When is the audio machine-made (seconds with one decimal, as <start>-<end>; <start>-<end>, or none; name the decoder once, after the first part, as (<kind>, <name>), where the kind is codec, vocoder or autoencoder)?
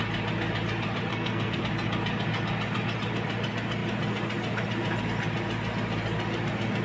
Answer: 1.1-1.6 (codec, SNAC)